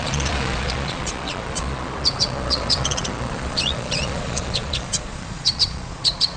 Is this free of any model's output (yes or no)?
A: no